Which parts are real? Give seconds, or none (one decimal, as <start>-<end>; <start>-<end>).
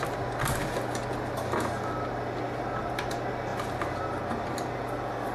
0.0-5.3